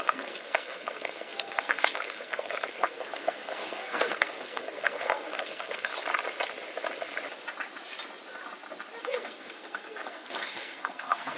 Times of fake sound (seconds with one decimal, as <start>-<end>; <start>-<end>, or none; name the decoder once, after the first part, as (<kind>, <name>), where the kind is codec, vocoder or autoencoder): 0.0-5.9 (codec, SNAC); 9.0-11.4